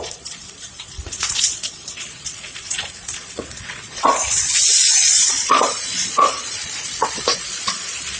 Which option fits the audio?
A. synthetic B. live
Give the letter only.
A